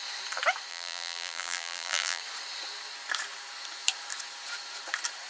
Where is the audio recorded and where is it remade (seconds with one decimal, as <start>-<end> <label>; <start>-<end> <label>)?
0.0-0.7 recorded; 0.7-2.2 remade; 2.2-5.3 recorded